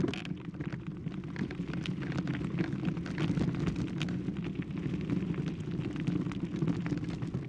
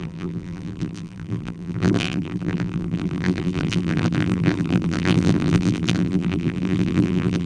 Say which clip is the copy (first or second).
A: second